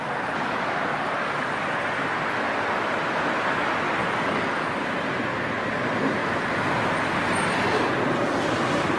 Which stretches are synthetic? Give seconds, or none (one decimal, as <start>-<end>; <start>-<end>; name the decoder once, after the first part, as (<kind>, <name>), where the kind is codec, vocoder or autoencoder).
0.9-2.1 (codec, DAC); 4.0-4.8